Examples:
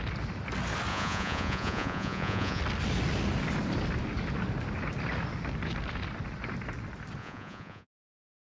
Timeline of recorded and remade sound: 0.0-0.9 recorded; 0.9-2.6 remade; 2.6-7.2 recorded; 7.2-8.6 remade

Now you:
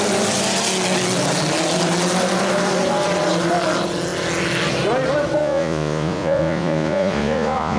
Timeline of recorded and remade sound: 0.0-5.4 recorded; 5.4-7.8 remade

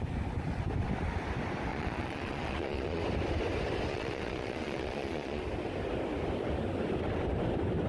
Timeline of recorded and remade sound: 0.0-1.7 recorded; 1.7-3.0 remade; 3.0-3.9 recorded; 3.9-5.4 remade; 5.4-7.9 recorded

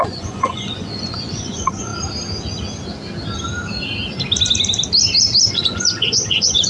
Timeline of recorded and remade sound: 0.0-1.9 remade; 1.9-5.5 recorded; 5.5-6.7 remade

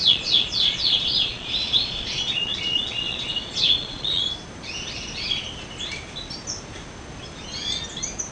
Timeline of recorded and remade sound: 0.0-4.2 remade; 4.2-8.3 recorded

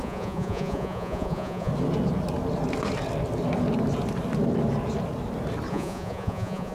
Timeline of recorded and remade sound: 0.0-1.7 remade; 1.7-5.7 recorded; 5.7-6.7 remade

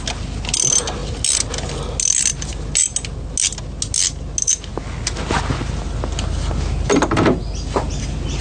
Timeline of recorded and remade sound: 0.0-8.4 recorded